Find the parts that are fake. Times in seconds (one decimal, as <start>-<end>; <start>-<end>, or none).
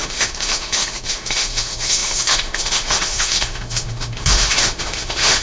0.0-5.4